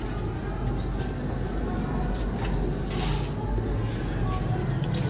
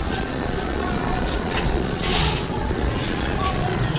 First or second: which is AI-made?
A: second